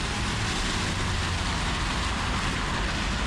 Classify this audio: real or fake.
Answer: real